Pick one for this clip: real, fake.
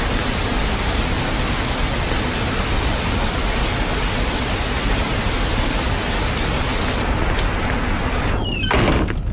real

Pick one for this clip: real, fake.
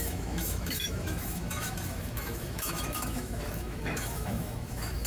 fake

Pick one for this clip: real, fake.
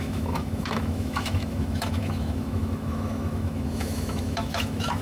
fake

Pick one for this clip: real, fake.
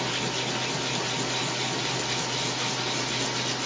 real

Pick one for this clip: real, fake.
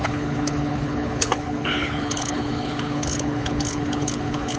fake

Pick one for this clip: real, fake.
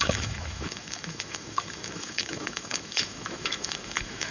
fake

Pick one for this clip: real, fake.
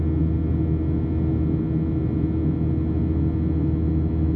real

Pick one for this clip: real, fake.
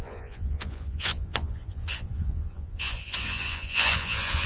fake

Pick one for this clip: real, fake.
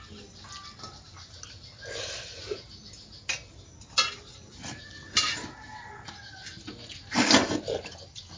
real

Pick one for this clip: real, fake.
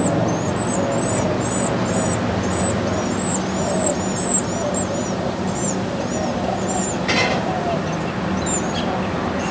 real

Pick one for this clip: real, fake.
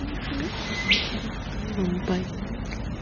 real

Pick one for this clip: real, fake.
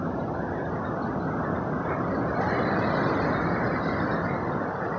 real